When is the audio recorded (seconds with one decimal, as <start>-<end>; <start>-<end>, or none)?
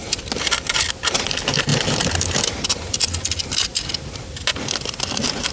0.0-5.5